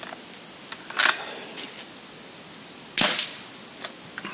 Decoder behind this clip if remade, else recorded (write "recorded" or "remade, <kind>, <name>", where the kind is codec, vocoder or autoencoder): recorded